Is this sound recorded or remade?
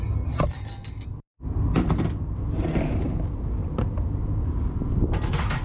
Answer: recorded